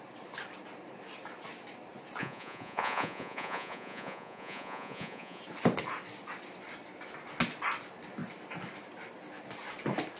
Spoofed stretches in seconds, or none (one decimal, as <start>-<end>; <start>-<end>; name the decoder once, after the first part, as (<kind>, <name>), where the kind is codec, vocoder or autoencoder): 2.2-5.4 (vocoder, Vocos)